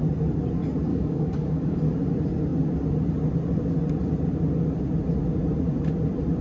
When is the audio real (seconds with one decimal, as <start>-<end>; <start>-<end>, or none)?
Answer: 0.0-0.9; 1.9-6.4